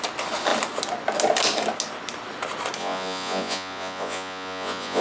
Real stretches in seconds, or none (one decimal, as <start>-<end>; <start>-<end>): 0.0-2.8